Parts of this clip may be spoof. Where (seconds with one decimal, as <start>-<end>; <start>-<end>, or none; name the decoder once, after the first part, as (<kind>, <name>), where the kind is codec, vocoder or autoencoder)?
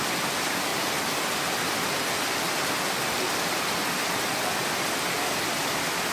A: 0.0-0.7 (vocoder, BigVGAN v2); 4.1-4.6; 5.6-6.1